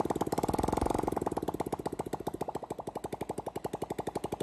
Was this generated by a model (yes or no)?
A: no